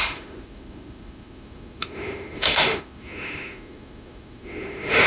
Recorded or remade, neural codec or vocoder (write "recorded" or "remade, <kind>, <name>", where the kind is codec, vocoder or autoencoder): remade, autoencoder, DAC-VAE